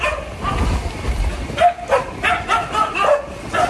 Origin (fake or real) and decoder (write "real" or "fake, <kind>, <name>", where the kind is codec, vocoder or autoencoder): real